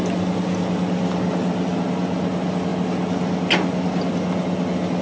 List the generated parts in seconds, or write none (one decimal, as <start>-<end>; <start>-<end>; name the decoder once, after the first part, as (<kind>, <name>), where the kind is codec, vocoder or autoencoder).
none